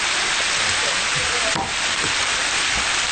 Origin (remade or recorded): recorded